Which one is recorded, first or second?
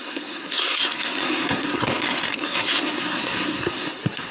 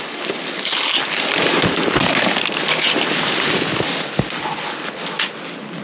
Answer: second